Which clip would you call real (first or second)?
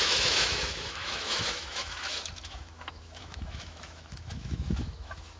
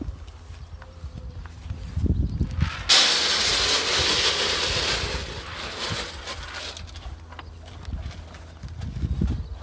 second